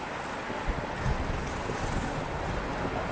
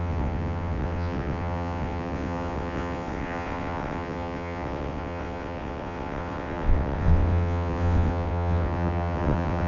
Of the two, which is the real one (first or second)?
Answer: first